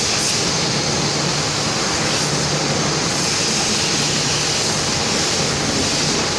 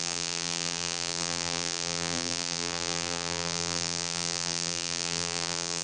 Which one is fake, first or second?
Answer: second